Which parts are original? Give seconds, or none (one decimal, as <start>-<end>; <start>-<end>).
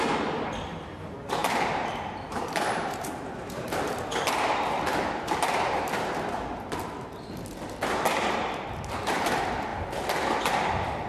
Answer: 0.0-1.4; 4.1-11.1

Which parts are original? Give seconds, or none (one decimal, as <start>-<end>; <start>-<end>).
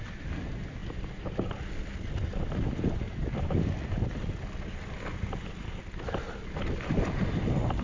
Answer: 0.0-7.8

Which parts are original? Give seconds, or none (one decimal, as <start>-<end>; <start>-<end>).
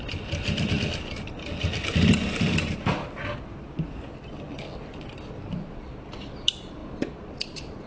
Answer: 0.0-6.8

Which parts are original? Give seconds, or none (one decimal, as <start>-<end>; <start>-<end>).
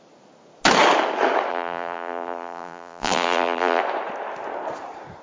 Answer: 0.0-1.5; 3.8-5.2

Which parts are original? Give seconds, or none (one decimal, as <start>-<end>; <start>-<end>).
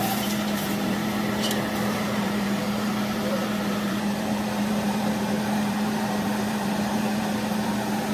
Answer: none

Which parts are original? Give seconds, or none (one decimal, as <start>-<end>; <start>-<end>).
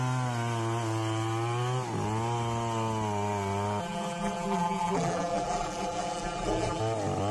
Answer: 0.0-3.8; 6.8-7.3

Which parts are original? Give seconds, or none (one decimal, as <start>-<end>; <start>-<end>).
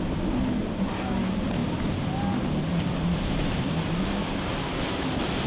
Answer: 0.0-5.5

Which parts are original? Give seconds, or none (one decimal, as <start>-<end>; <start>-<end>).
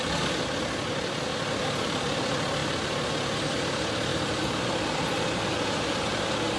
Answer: 0.0-2.6; 3.1-4.1; 5.3-6.6